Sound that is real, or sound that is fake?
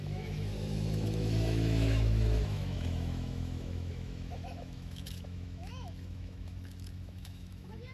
fake